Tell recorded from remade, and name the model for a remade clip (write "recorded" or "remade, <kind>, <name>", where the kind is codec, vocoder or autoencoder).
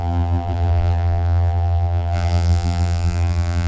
remade, vocoder, BigVGAN v2